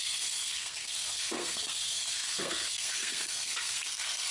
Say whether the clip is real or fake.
fake